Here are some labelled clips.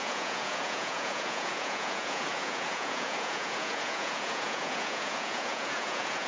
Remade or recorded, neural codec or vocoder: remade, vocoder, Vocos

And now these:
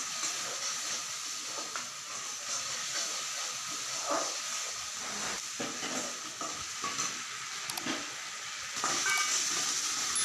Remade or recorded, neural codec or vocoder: recorded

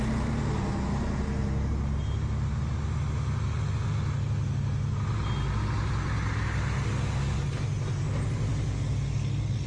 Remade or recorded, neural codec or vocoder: recorded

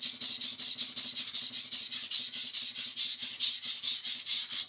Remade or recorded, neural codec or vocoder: recorded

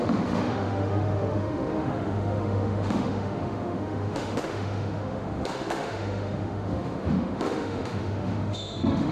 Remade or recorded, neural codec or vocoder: remade, autoencoder, DAC-VAE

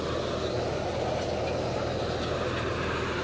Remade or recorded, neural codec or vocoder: recorded